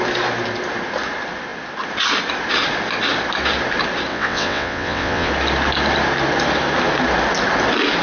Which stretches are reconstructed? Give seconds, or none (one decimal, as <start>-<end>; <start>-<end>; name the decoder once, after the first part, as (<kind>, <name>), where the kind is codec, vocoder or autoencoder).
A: 4.1-5.3 (vocoder, WaveNeXt)